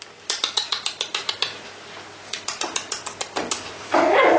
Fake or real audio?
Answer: real